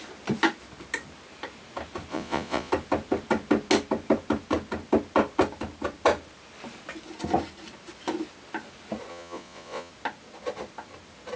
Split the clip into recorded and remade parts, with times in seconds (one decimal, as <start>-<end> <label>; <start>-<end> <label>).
0.0-2.1 recorded; 2.1-2.7 remade; 2.7-9.1 recorded; 9.1-9.9 remade; 9.9-11.4 recorded